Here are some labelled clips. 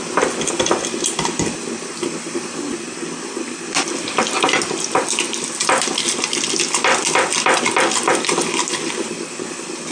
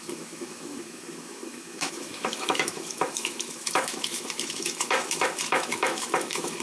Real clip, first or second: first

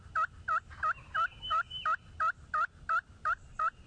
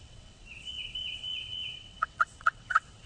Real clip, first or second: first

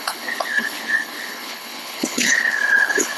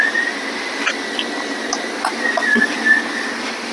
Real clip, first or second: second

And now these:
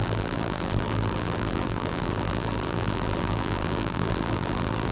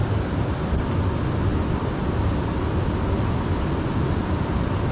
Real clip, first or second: second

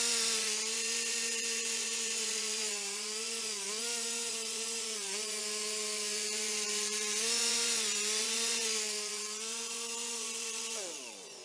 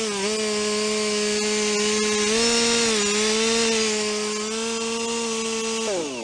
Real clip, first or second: second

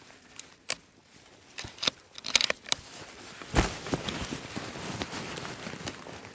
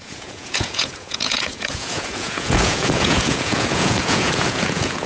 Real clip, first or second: first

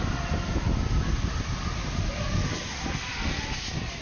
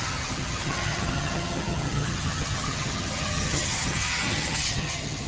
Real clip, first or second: first